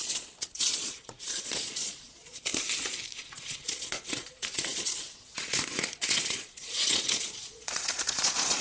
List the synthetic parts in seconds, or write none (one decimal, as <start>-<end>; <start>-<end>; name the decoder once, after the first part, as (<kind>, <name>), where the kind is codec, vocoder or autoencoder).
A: 0.0-2.5 (vocoder, Vocos); 3.3-8.6